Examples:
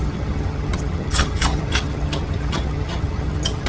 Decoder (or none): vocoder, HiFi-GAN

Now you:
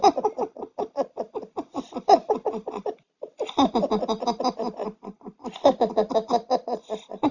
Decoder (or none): none